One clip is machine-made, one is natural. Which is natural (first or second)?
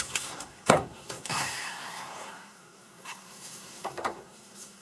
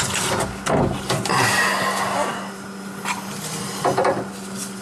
second